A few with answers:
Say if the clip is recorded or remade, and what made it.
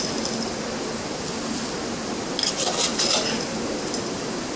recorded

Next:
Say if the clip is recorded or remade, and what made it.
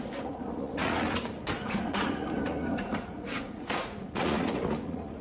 remade, vocoder, Vocos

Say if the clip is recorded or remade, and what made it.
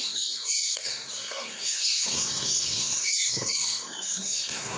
remade, codec, SNAC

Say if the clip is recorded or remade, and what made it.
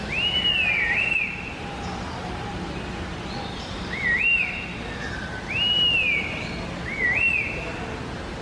recorded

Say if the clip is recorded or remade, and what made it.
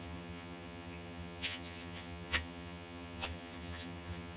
remade, vocoder, HiFi-GAN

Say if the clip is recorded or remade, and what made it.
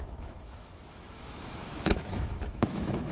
remade, autoencoder, DAC-VAE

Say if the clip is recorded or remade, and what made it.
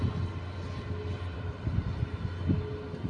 recorded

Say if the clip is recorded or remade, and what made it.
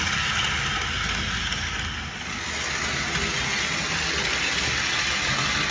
recorded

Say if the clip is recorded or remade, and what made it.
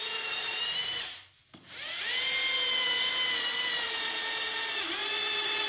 recorded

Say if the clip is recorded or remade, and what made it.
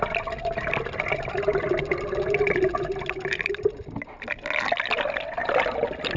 recorded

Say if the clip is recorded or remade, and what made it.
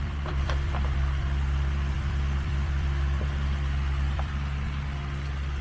remade, vocoder, BigVGAN v2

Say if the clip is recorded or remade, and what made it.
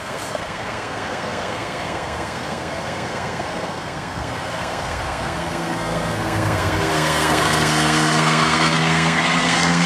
remade, codec, SNAC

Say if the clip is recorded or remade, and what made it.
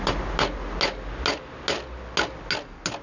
recorded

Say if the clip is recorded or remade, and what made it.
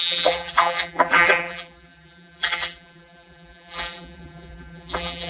remade, vocoder, BigVGAN v2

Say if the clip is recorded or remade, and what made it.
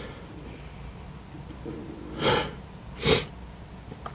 recorded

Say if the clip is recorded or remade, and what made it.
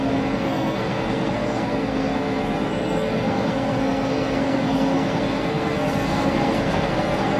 remade, codec, SNAC